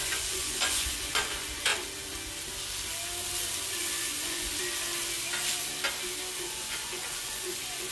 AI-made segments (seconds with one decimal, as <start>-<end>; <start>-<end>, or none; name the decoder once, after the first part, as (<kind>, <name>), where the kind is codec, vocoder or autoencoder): 0.0-1.7 (vocoder, Vocos); 3.8-4.5; 6.4-7.9